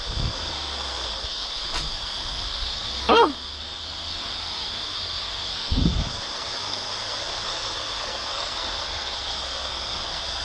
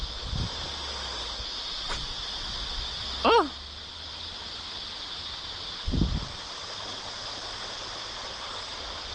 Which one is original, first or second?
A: second